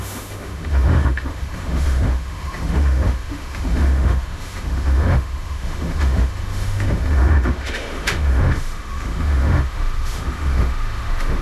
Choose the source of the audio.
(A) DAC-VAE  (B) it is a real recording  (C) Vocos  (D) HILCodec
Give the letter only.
A